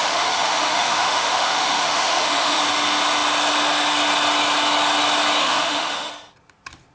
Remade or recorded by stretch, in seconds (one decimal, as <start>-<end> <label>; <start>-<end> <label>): 0.0-2.6 remade; 2.6-5.4 recorded; 5.4-6.1 remade; 6.1-6.9 recorded